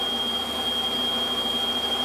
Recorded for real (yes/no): yes